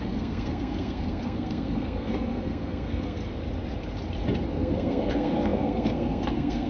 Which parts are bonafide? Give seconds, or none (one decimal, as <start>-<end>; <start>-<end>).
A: 3.2-4.5